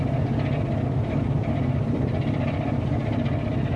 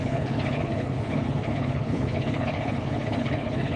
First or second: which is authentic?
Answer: first